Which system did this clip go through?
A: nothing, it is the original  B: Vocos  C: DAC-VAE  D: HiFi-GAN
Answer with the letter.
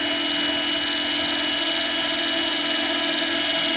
A